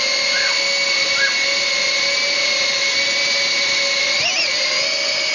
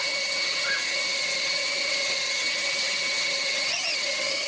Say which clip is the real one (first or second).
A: first